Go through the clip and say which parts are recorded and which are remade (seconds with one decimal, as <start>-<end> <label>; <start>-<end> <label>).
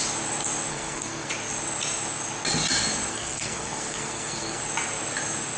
0.0-0.7 recorded; 0.7-1.3 remade; 1.3-3.1 recorded; 3.1-4.6 remade; 4.6-5.6 recorded